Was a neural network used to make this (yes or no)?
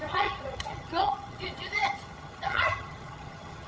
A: yes